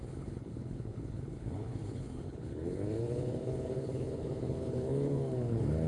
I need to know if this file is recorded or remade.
remade